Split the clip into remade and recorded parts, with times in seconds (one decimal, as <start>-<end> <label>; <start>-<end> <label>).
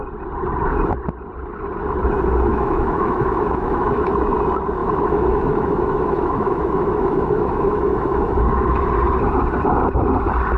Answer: 0.0-2.5 recorded; 2.5-4.1 remade; 4.1-4.8 recorded; 4.8-8.9 remade; 8.9-10.6 recorded